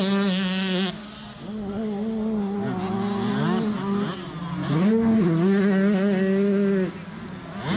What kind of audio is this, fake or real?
real